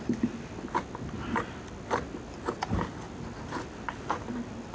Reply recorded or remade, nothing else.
recorded